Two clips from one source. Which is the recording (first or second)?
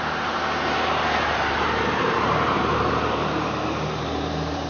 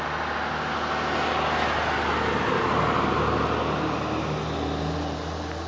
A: second